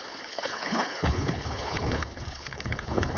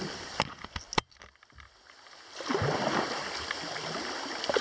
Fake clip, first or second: first